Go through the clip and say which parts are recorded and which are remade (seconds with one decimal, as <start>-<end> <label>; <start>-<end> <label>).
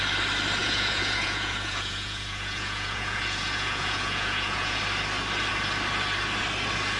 0.0-0.6 recorded; 0.6-4.8 remade; 4.8-7.0 recorded